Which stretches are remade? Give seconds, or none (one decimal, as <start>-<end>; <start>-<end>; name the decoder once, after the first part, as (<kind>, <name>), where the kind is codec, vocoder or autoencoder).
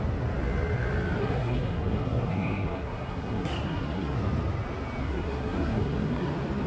1.2-4.2 (codec, SNAC); 5.0-6.3